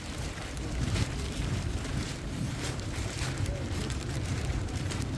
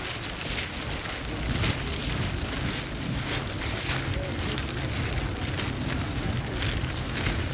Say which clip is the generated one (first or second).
first